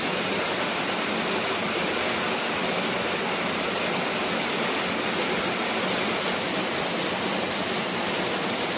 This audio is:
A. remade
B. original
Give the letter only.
B